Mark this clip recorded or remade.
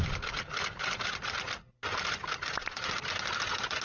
recorded